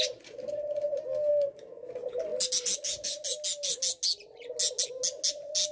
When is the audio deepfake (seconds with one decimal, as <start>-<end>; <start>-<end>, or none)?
1.3-1.9